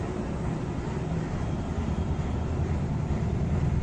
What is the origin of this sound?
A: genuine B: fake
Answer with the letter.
B